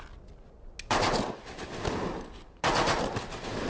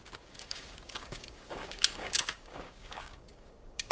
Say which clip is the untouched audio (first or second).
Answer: first